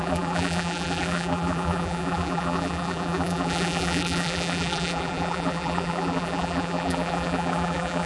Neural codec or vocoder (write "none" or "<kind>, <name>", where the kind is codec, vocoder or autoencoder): vocoder, BigVGAN v2